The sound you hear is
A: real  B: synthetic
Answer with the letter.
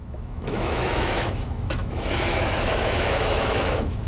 B